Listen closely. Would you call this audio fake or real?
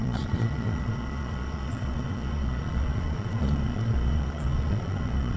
fake